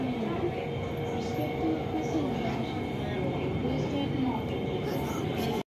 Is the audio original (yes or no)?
yes